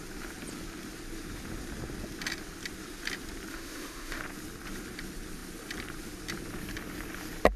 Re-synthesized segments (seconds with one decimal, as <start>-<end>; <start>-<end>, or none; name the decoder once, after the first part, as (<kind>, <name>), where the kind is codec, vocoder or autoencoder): 3.5-4.2 (autoencoder, DAC-VAE)